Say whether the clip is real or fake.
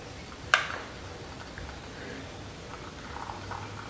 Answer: real